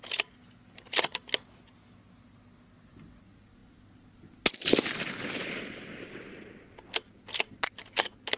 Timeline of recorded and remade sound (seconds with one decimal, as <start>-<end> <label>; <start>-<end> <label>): 0.0-8.4 recorded